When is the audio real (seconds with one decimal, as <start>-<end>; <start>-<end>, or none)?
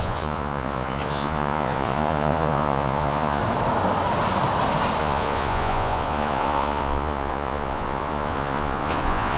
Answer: 3.4-5.0